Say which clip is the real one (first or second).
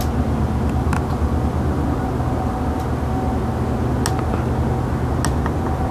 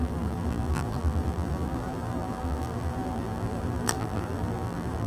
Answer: first